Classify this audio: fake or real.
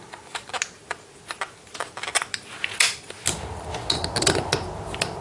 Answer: real